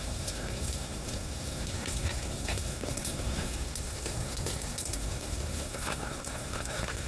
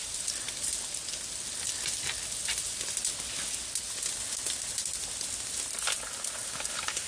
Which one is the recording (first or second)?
second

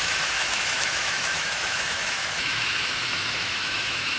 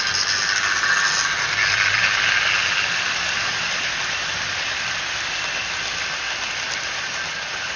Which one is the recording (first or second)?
second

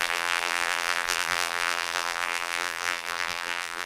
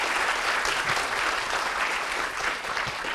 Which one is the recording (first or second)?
second